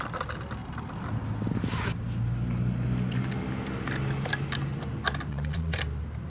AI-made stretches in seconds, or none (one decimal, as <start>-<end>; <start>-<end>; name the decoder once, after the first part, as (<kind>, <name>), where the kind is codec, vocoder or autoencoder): 5.3-5.8 (vocoder, Vocos)